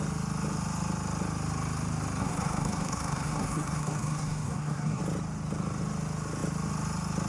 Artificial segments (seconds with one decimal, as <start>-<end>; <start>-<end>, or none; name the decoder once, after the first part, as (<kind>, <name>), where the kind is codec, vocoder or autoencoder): 2.2-5.0 (codec, SNAC)